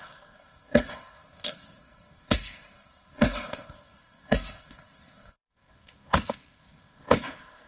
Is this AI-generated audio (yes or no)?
yes